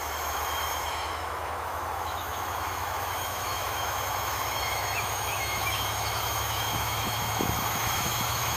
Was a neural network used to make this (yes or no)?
yes